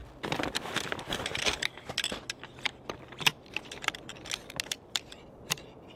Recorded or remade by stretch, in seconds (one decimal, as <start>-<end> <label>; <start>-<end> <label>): 0.0-6.0 recorded